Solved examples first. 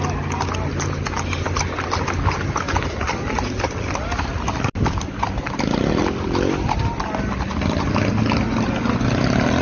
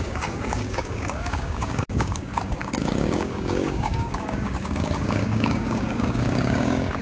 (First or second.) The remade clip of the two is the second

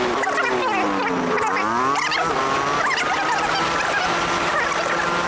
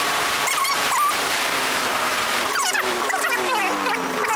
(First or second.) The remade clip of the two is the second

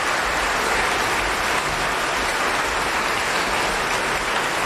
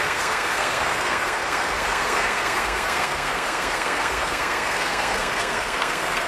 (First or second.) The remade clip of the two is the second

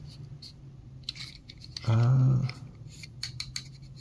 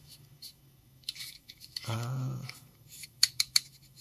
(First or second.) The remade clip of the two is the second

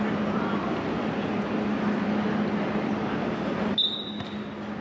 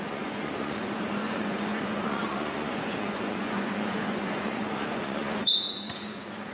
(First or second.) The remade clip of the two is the second